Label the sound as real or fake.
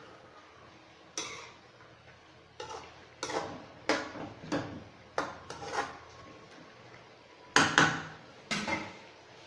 real